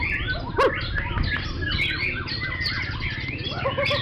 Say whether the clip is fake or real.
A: real